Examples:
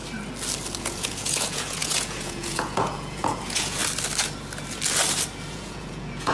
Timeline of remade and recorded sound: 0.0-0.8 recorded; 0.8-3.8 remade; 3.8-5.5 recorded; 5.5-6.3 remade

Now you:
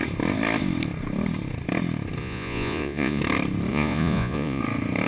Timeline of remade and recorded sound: 0.0-2.2 recorded; 2.2-3.2 remade; 3.2-3.7 recorded; 3.7-4.6 remade; 4.6-5.1 recorded

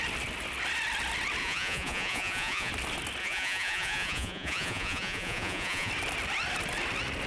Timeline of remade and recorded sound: 0.0-1.4 recorded; 1.4-2.7 remade; 2.7-3.2 recorded; 3.2-5.9 remade; 5.9-7.3 recorded